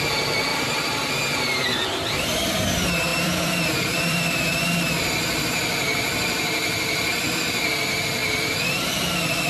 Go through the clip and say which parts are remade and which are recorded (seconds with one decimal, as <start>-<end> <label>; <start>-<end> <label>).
0.0-0.5 recorded; 0.5-1.1 remade; 1.1-3.1 recorded; 3.1-4.4 remade; 4.4-7.1 recorded; 7.1-7.7 remade; 7.7-8.2 recorded; 8.2-9.5 remade